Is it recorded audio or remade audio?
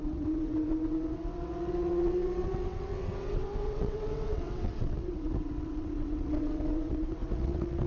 remade